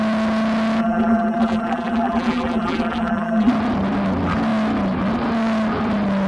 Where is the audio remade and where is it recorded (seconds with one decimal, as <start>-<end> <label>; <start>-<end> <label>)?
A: 0.0-0.8 recorded; 0.8-3.5 remade; 3.5-6.3 recorded